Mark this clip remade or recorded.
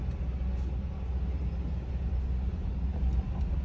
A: recorded